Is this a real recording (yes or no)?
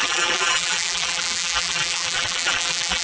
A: no